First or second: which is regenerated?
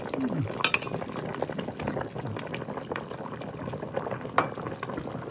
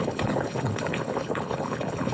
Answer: second